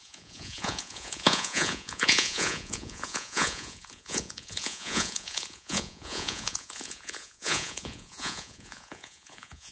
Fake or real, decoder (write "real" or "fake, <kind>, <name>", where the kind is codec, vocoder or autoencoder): fake, vocoder, Vocos